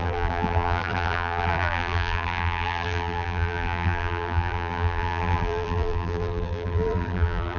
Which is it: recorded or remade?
remade